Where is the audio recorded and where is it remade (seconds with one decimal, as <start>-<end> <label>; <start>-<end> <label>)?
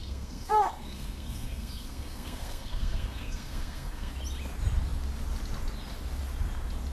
0.0-4.1 remade; 4.1-6.9 recorded